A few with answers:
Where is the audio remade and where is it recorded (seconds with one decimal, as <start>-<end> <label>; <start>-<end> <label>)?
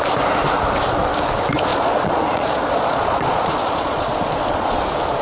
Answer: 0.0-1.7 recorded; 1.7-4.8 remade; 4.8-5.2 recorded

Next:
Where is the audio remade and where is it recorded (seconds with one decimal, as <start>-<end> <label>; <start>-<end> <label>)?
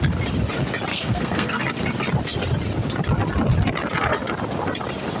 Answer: 0.0-0.9 recorded; 0.9-1.6 remade; 1.6-5.2 recorded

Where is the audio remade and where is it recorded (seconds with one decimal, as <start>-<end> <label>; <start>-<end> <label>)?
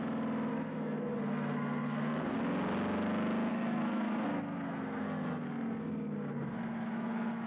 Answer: 0.0-0.5 recorded; 0.5-2.4 remade; 2.4-3.5 recorded; 3.5-7.5 remade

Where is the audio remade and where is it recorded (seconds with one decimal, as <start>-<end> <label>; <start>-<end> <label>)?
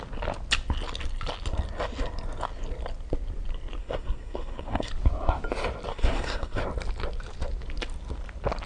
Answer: 0.0-3.8 recorded; 3.8-4.9 remade; 4.9-5.9 recorded; 5.9-6.6 remade; 6.6-8.7 recorded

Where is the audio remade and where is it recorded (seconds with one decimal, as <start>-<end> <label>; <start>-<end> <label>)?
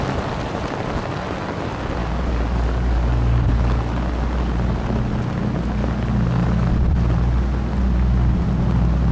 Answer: 0.0-2.0 recorded; 2.0-3.8 remade; 3.8-5.8 recorded; 5.8-6.8 remade; 6.8-9.1 recorded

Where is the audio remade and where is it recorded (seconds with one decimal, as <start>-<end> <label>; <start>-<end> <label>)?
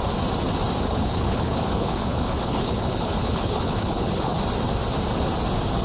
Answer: 0.0-0.9 recorded; 0.9-4.4 remade; 4.4-5.8 recorded